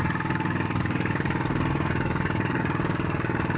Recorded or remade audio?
remade